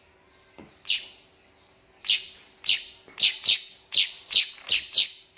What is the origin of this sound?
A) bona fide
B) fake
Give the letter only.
A